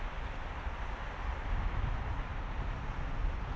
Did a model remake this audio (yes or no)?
no